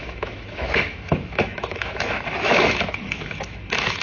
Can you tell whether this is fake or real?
fake